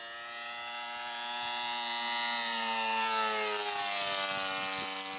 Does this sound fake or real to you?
real